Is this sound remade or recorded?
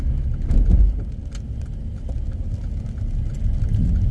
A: recorded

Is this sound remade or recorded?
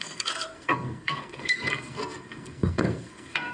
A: remade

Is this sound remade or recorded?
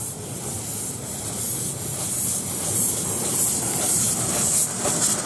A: recorded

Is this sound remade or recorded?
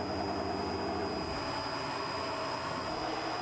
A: recorded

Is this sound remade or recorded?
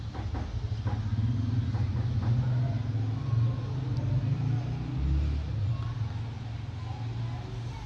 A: recorded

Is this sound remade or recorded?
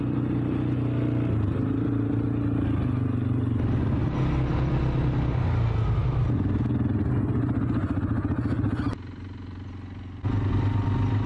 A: recorded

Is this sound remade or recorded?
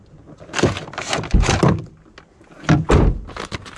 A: recorded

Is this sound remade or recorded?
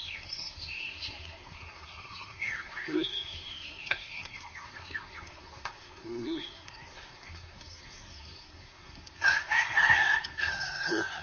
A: remade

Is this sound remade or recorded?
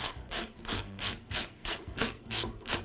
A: remade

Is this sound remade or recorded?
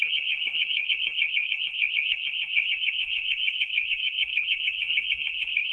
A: remade